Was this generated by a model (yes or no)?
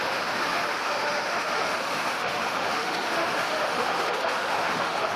yes